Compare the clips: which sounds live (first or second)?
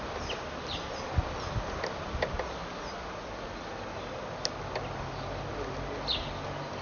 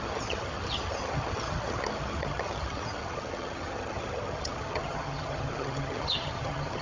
first